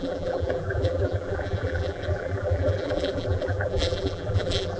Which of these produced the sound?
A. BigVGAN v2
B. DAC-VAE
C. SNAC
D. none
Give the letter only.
A